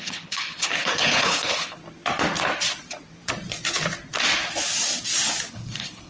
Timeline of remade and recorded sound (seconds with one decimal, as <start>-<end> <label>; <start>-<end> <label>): 0.0-1.8 remade; 1.8-5.5 recorded; 5.5-6.1 remade